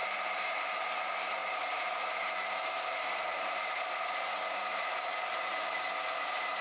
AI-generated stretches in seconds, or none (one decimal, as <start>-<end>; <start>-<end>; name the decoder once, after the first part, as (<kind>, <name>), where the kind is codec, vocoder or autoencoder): none